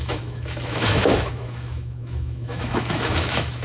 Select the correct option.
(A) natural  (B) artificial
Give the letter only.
B